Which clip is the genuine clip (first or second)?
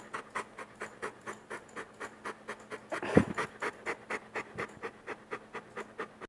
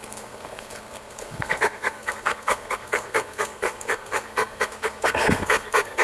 first